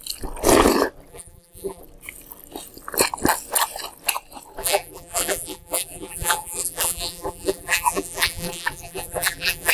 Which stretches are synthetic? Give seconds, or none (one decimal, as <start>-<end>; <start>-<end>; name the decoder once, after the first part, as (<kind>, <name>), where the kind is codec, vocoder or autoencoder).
1.1-1.8 (vocoder, BigVGAN v2); 4.6-9.7